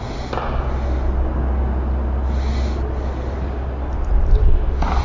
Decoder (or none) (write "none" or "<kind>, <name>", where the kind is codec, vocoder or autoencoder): none